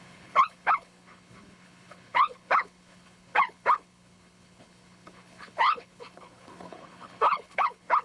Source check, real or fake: fake